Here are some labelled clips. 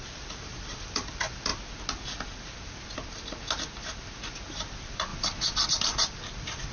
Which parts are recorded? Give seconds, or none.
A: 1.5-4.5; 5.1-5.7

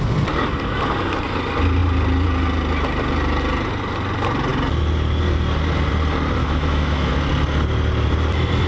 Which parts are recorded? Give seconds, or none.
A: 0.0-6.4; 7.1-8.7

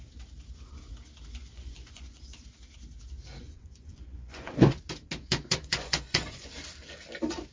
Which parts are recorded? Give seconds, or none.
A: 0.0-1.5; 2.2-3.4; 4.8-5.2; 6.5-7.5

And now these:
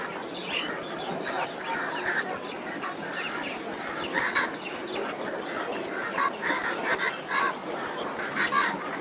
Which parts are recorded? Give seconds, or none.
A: 0.0-9.0